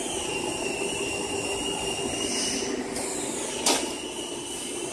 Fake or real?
real